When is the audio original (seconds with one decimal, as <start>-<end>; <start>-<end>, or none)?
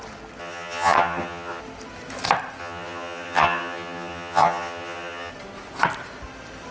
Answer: 0.0-0.4; 1.6-2.6; 5.3-6.7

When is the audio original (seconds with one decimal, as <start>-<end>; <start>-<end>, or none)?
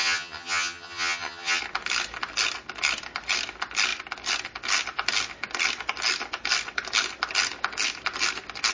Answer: 1.6-8.7